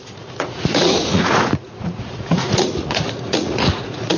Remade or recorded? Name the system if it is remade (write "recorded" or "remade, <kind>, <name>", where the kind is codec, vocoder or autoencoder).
remade, vocoder, Vocos